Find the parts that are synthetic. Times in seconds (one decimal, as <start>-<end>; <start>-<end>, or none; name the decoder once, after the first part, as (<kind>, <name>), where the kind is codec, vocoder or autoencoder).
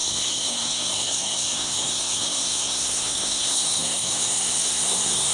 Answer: 0.0-5.3 (codec, SNAC)